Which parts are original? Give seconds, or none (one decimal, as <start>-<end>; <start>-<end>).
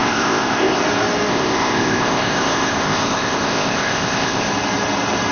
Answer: 0.8-1.3; 4.5-5.3